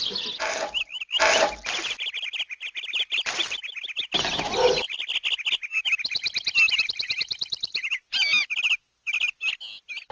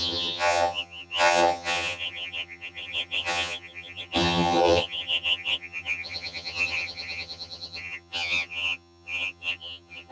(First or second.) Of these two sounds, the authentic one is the first